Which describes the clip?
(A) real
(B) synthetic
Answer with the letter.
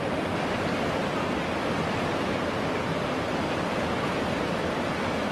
A